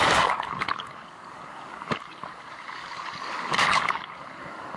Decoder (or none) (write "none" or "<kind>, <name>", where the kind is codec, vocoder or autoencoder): codec, DAC